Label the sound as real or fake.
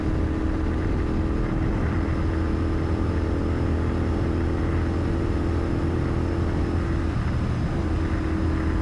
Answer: real